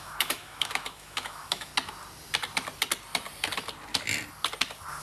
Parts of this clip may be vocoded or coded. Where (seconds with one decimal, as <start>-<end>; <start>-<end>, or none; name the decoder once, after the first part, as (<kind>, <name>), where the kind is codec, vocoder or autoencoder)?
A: 0.0-1.7 (autoencoder, DAC-VAE)